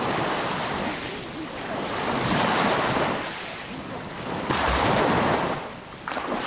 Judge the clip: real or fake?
real